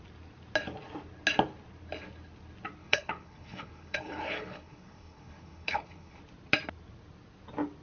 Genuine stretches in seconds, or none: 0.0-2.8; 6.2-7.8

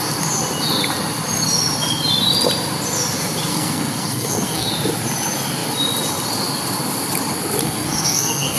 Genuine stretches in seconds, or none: 0.0-3.5; 4.7-7.6

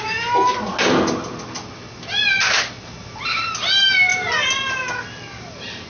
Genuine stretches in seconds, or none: 0.0-5.9

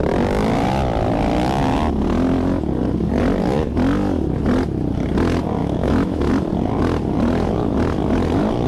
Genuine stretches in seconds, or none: 0.0-5.6; 6.3-8.7

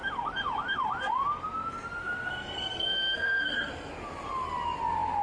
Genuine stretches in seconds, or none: 0.0-2.0; 3.9-5.2

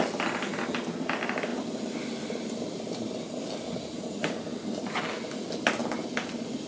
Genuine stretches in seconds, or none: 0.0-1.5; 5.0-6.7

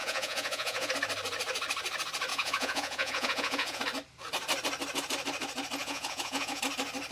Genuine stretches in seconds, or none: 0.9-2.3; 3.8-5.8; 6.6-7.1